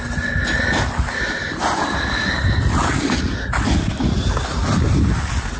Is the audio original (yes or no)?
yes